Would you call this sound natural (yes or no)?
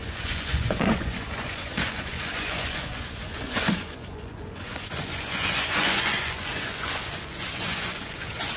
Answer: no